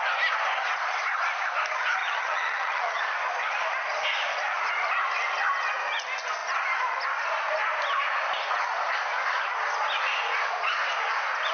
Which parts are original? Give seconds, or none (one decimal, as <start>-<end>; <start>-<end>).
0.0-2.0; 3.0-11.5